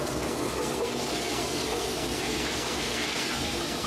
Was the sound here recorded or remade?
remade